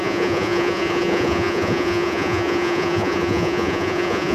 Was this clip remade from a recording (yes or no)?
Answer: yes